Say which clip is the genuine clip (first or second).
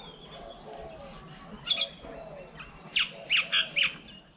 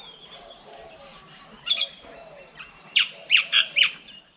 first